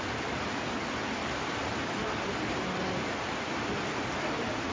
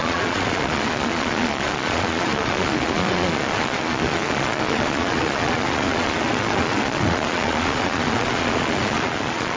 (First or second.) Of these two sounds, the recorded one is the first